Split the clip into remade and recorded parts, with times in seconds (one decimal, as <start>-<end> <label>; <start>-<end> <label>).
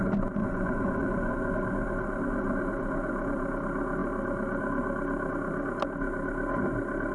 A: 0.0-0.4 recorded; 0.4-1.3 remade; 1.3-7.1 recorded